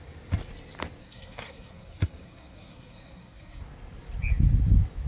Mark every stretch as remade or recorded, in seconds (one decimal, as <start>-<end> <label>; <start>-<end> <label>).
0.0-1.0 recorded; 1.0-3.6 remade; 3.6-5.1 recorded